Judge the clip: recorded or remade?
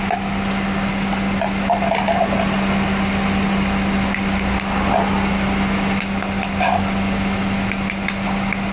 recorded